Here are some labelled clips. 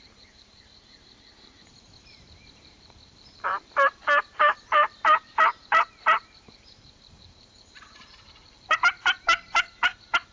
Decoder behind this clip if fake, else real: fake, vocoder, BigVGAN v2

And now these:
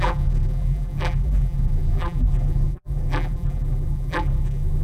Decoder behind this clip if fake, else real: fake, vocoder, BigVGAN v2